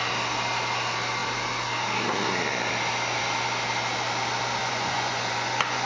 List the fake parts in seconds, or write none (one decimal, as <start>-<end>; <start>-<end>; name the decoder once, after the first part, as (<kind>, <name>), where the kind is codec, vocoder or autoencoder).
4.6-5.9 (vocoder, Vocos)